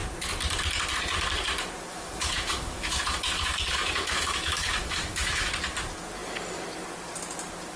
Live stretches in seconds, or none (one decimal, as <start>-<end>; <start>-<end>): 0.0-1.9; 5.5-7.8